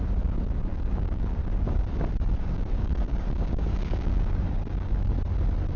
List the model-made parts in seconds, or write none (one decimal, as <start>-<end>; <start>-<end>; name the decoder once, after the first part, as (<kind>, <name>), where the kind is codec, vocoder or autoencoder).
0.7-2.0 (codec, DAC); 2.4-5.1